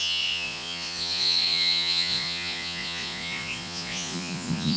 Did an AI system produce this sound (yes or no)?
yes